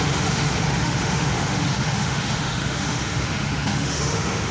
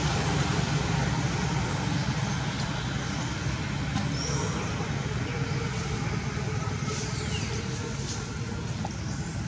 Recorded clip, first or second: second